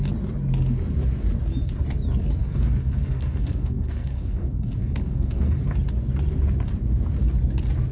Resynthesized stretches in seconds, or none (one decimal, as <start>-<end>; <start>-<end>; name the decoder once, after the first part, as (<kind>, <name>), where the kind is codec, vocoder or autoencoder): 2.4-5.6 (codec, SNAC)